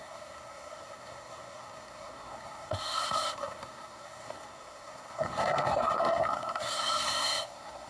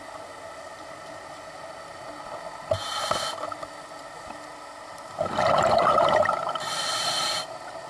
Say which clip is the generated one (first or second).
first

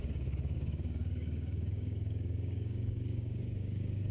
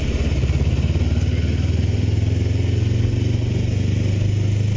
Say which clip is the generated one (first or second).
first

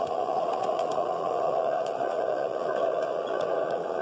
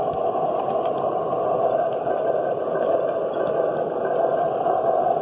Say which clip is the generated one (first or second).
first